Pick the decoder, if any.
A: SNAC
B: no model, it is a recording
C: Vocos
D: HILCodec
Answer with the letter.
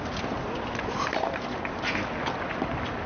B